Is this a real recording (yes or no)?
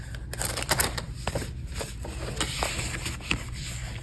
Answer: yes